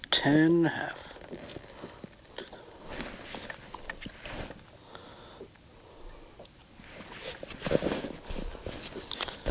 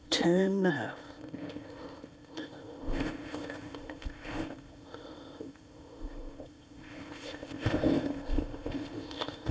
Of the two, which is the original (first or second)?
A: first